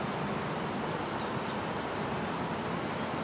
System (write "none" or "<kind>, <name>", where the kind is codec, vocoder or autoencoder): none